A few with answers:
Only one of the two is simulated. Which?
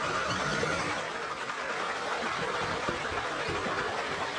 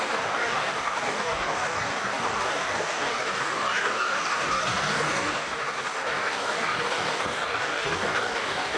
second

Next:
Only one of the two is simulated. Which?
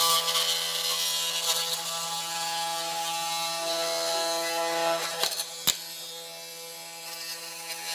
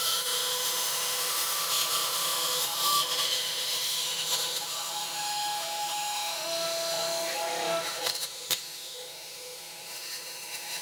second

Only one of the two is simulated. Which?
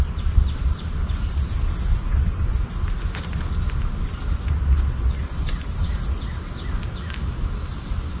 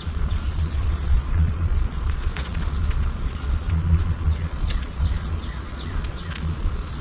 second